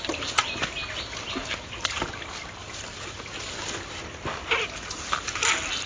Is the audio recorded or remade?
recorded